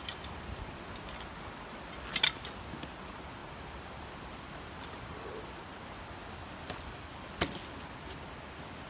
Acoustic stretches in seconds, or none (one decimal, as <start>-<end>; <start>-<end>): 0.0-3.4; 4.5-6.4; 7.3-8.9